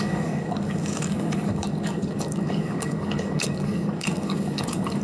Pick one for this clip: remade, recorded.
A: remade